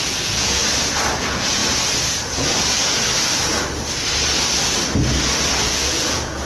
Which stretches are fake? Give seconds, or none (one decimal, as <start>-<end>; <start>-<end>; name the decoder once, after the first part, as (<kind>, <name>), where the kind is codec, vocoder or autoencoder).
0.0-0.6 (vocoder, Vocos); 1.2-1.6; 5.5-6.5